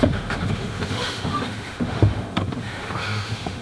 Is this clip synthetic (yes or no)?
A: yes